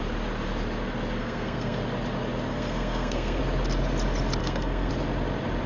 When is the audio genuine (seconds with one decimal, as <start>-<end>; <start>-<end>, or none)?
0.0-1.2; 1.8-2.5; 3.4-4.4; 4.9-5.7